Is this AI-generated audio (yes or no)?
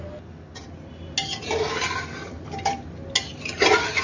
no